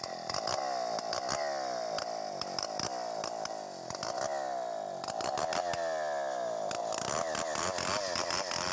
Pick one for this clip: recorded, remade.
recorded